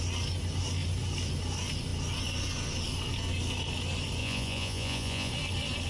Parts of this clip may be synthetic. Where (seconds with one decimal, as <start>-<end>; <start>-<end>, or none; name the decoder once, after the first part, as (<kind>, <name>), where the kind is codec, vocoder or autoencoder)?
4.2-5.3 (vocoder, Vocos)